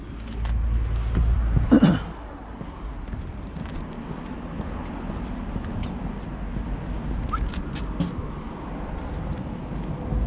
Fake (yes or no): no